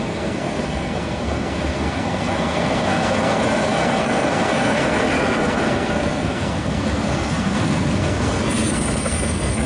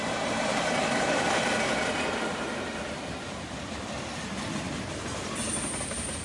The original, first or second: second